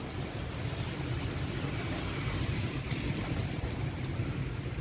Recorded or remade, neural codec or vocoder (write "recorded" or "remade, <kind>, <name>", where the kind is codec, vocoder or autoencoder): recorded